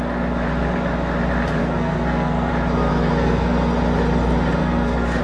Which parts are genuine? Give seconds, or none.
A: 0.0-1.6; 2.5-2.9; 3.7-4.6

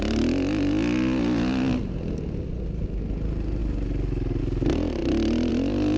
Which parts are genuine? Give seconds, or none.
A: 0.0-6.0

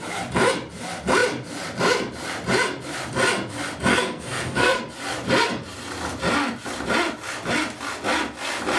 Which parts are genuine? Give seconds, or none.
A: 0.0-3.9; 4.8-8.8

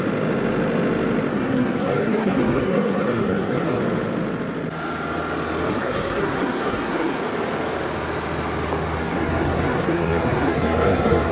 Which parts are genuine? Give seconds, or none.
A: 0.0-1.3; 3.8-5.7; 7.2-9.0

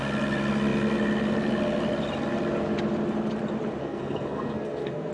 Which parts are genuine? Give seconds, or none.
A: 0.0-3.8

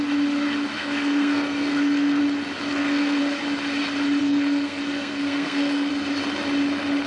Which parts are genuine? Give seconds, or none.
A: 0.0-0.7; 2.2-2.7; 3.2-4.2; 5.9-7.1

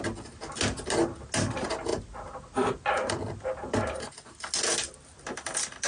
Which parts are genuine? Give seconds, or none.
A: 0.0-5.9

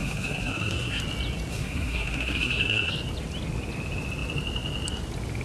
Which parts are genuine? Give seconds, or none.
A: 1.0-1.5; 2.9-5.4